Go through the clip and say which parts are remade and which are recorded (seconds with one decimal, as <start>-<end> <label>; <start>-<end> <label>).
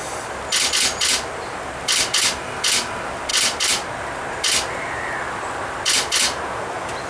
0.0-7.1 recorded